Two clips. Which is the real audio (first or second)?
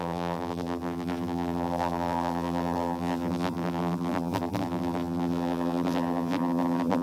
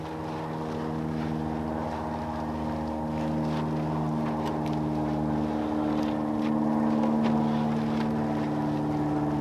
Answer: second